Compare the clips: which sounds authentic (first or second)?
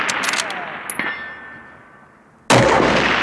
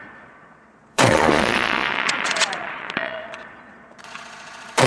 first